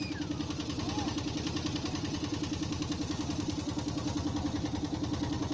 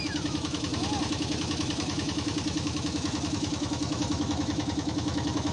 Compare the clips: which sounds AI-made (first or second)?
second